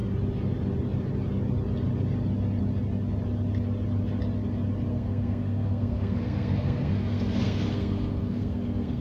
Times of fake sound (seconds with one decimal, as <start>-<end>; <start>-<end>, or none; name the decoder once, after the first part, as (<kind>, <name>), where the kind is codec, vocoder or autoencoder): 4.9-9.0 (codec, SNAC)